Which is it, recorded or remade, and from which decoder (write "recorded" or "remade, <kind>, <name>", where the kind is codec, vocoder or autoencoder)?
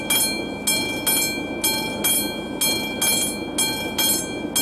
recorded